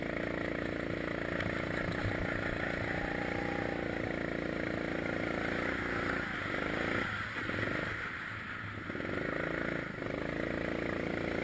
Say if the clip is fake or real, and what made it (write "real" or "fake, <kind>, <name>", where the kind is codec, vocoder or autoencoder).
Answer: real